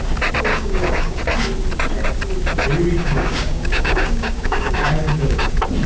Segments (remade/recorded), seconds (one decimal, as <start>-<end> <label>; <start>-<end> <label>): 0.0-0.5 recorded; 0.5-1.2 remade; 1.2-3.0 recorded; 3.0-5.5 remade; 5.5-5.9 recorded